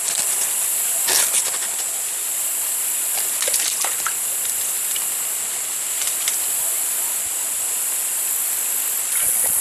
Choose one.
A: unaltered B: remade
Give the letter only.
A